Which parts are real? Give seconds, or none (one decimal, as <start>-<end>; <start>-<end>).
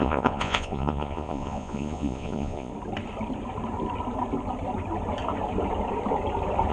2.7-6.7